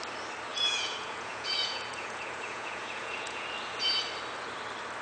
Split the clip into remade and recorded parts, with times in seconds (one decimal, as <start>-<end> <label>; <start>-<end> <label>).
0.0-0.5 recorded; 0.5-3.5 remade; 3.5-5.0 recorded